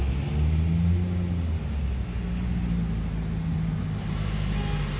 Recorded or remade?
recorded